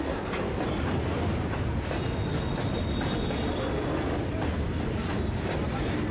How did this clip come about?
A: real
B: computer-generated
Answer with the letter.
A